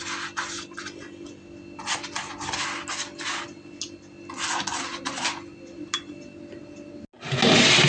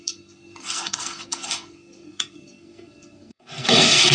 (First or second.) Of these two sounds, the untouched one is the first